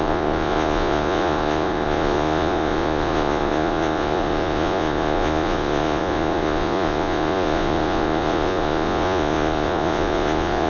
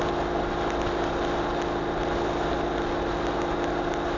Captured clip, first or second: second